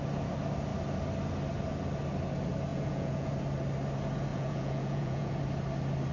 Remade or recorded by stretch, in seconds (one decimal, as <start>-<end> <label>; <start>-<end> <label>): 0.0-2.7 recorded; 2.7-3.3 remade; 3.3-4.3 recorded; 4.3-5.4 remade; 5.4-6.1 recorded